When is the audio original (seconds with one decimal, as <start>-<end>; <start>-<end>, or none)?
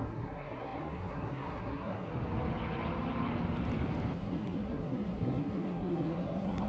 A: 2.1-4.2